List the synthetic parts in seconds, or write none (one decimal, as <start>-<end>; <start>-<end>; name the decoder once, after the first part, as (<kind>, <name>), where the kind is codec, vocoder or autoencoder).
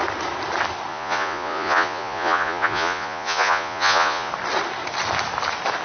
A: 0.9-4.3 (vocoder, Vocos)